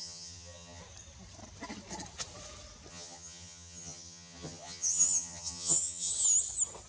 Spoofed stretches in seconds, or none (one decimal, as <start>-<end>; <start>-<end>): 0.0-0.8; 2.9-6.1